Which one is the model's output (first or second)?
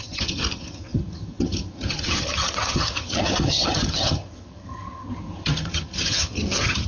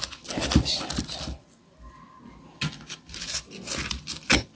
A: first